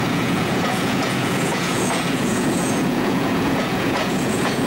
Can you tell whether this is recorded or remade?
remade